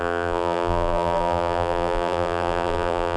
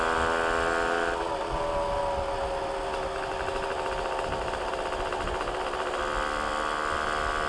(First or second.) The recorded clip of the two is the second